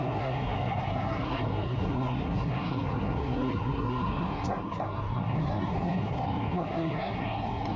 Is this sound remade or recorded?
remade